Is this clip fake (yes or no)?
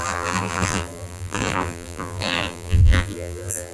yes